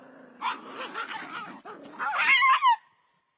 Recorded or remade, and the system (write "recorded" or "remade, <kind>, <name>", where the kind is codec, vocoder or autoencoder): recorded